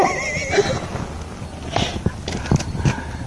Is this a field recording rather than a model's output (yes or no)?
yes